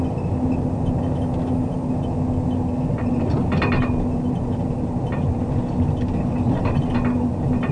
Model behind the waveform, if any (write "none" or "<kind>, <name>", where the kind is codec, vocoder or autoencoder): none